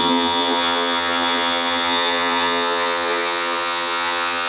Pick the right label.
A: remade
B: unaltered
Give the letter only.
A